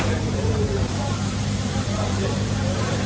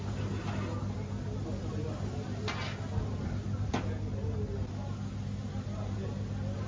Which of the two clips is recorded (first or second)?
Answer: second